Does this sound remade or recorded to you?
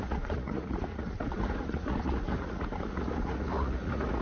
remade